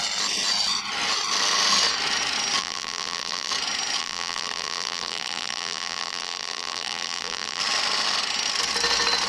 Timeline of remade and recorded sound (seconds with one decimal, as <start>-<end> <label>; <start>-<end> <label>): 0.0-2.6 recorded; 2.6-3.5 remade; 3.5-4.0 recorded; 4.0-7.6 remade; 7.6-9.3 recorded